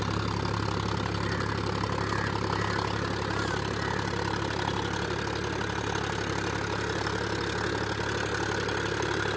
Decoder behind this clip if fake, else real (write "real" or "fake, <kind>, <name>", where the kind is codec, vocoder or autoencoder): real